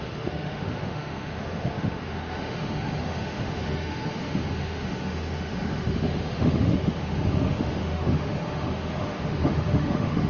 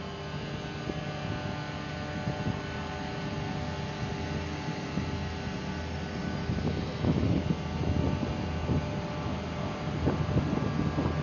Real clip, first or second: second